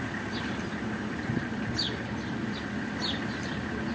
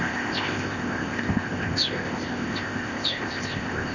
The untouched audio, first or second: first